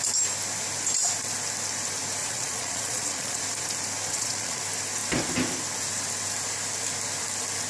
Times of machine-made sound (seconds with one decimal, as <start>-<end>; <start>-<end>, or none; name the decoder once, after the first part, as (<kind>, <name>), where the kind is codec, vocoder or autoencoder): 2.2-3.4 (vocoder, Vocos); 4.1-4.6